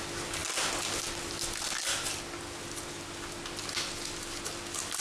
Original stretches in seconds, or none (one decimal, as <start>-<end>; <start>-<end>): 0.0-5.0